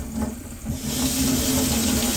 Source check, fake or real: real